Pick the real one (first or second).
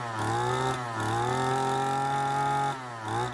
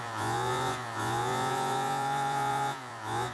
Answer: first